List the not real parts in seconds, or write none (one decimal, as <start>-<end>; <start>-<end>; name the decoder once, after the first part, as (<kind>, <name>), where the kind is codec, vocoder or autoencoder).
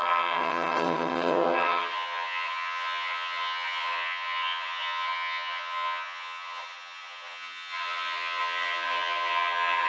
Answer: 0.0-9.9 (vocoder, HiFi-GAN)